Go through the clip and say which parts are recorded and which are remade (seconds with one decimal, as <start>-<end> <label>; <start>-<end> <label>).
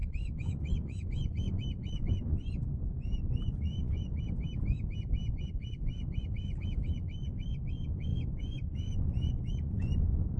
0.0-4.5 remade; 4.5-5.3 recorded; 5.3-10.4 remade